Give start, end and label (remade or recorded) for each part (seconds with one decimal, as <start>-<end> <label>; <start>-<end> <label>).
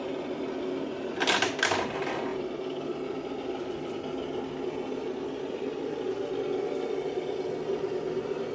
0.0-8.5 recorded